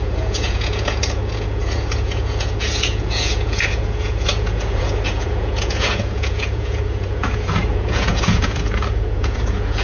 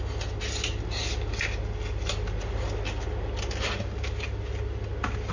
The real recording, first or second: second